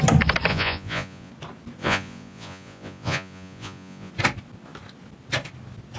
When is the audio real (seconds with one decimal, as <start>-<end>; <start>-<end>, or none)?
0.0-0.5; 1.3-1.8; 4.1-6.0